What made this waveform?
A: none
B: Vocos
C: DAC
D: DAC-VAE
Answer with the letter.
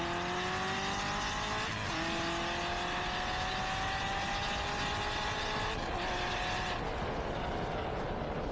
A